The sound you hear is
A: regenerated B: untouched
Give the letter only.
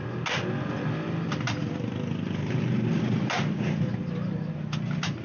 B